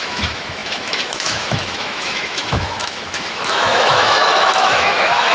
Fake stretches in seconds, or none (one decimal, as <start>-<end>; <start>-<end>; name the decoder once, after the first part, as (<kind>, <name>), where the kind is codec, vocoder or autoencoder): 0.0-5.3 (autoencoder, DAC-VAE)